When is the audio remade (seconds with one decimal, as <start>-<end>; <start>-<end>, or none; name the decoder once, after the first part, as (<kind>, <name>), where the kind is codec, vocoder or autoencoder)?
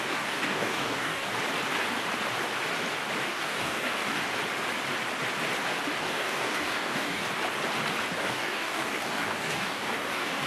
0.0-1.3 (codec, DAC); 3.2-4.2; 6.0-7.2; 8.2-10.5